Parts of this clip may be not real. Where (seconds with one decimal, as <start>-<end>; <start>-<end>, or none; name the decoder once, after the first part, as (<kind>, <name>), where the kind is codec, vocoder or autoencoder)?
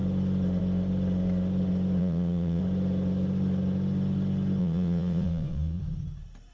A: 2.0-2.6 (vocoder, Vocos); 4.6-5.8